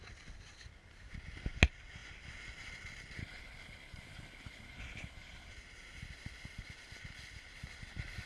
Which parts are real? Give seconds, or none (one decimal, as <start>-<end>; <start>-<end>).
0.0-3.2; 5.5-8.3